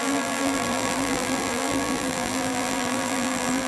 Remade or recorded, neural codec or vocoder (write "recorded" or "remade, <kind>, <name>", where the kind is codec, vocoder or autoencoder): remade, vocoder, BigVGAN v2